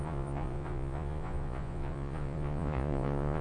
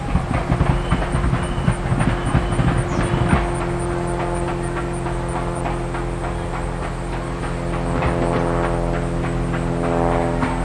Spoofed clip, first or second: first